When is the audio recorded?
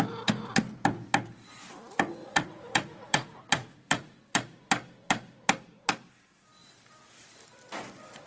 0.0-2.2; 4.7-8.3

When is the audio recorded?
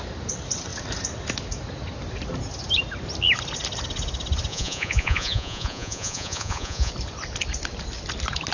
0.0-4.5; 6.9-8.5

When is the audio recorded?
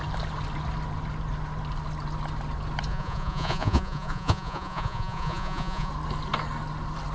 0.0-2.9; 5.9-7.1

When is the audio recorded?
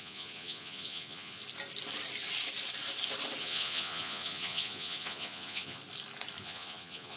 1.4-3.4; 5.8-6.4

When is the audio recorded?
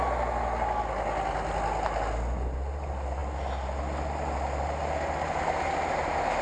0.0-6.4